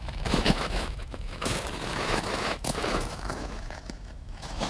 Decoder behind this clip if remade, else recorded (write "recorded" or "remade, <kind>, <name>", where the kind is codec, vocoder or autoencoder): remade, autoencoder, DAC-VAE